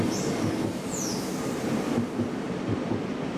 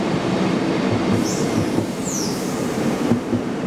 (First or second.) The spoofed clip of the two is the second